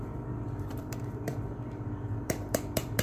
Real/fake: fake